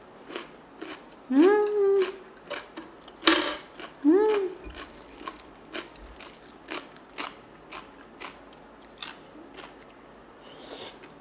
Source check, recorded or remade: recorded